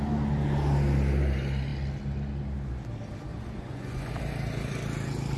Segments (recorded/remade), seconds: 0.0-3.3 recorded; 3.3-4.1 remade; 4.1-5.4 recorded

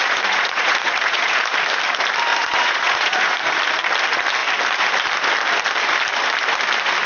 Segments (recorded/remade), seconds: 0.0-1.4 remade; 1.4-2.3 recorded; 2.3-3.5 remade; 3.5-7.1 recorded